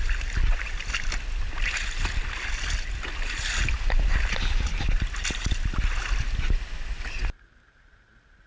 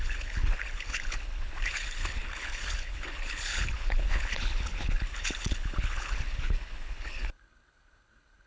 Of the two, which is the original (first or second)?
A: first